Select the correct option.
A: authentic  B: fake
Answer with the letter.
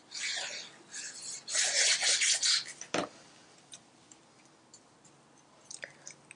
A